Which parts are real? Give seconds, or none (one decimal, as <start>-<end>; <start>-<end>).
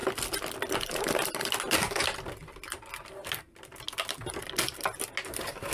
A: 0.0-5.7